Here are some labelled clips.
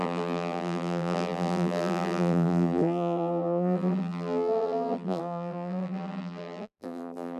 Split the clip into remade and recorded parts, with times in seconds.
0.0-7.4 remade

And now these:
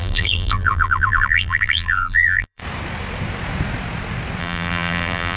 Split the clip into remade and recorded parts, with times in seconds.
0.0-2.6 remade; 2.6-4.4 recorded; 4.4-5.4 remade

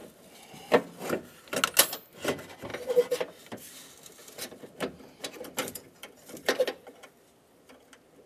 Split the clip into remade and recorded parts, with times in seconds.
0.0-5.6 recorded; 5.6-6.9 remade; 6.9-8.3 recorded

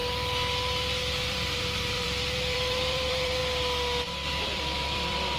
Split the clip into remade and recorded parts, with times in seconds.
0.0-1.3 recorded; 1.3-3.4 remade; 3.4-4.3 recorded; 4.3-5.4 remade

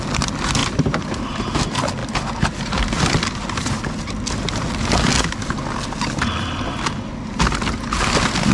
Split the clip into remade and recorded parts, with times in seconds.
0.0-0.6 recorded; 0.6-1.5 remade; 1.5-8.5 recorded

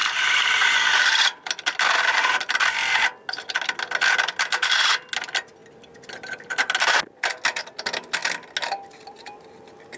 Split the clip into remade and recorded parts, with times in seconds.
0.0-10.0 recorded